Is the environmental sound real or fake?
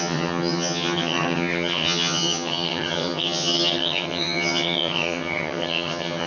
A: fake